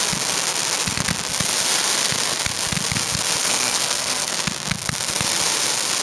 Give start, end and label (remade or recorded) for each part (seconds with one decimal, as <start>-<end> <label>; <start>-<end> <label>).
0.0-3.4 recorded; 3.4-4.3 remade; 4.3-6.0 recorded